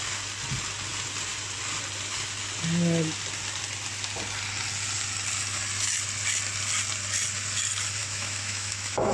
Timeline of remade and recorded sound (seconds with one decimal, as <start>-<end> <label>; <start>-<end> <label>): 0.0-8.0 recorded; 8.0-9.1 remade